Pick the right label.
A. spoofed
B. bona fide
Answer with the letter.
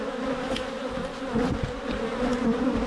B